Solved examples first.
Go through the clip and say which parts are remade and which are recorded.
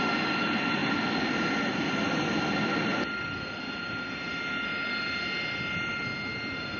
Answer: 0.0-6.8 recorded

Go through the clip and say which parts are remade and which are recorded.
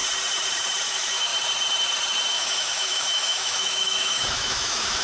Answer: 0.0-0.9 recorded; 0.9-1.3 remade; 1.3-2.3 recorded; 2.3-5.0 remade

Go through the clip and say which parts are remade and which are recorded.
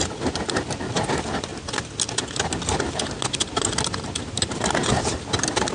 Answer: 0.0-5.7 recorded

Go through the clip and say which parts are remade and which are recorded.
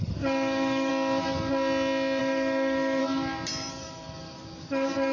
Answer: 0.0-0.9 remade; 0.9-2.2 recorded; 2.2-3.0 remade; 3.0-3.7 recorded; 3.7-5.1 remade